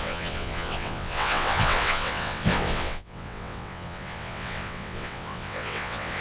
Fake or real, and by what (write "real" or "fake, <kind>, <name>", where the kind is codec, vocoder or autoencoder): fake, vocoder, WaveNeXt